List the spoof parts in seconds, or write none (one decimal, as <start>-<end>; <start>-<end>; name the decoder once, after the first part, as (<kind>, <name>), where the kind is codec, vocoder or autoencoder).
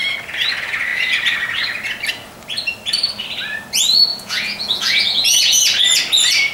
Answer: 4.1-5.6 (vocoder, Vocos)